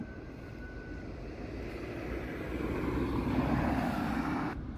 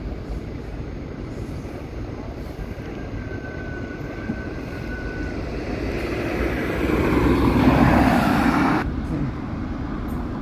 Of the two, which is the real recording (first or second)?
first